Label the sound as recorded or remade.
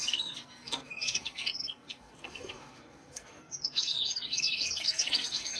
remade